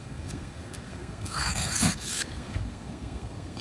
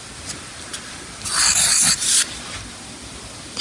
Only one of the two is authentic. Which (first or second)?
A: second